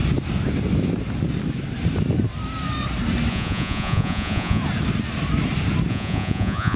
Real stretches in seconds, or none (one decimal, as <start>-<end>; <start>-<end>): 0.0-3.3; 4.6-5.9